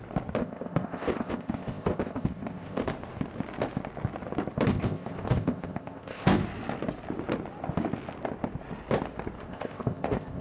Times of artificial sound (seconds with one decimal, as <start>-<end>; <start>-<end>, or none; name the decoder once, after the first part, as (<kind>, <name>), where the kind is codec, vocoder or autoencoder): 0.4-2.8 (codec, ZipCodec); 4.7-6.4; 9.5-10.4